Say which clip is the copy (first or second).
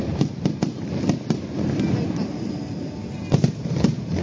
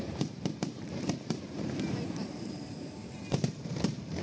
second